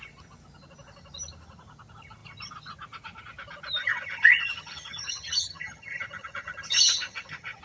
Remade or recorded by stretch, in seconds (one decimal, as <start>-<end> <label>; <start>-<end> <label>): 0.0-3.8 recorded; 3.8-7.6 remade